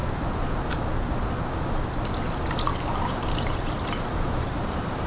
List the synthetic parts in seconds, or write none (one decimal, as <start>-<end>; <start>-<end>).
3.0-5.1